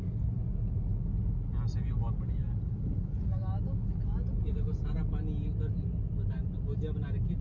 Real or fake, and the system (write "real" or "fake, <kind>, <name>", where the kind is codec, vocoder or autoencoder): real